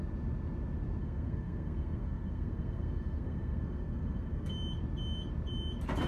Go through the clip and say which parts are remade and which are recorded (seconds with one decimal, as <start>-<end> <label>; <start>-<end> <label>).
0.0-1.0 recorded; 1.0-4.5 remade; 4.5-6.1 recorded